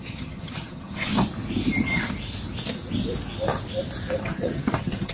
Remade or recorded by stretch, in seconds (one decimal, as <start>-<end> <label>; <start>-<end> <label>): 0.0-1.1 remade; 1.1-4.2 recorded; 4.2-5.1 remade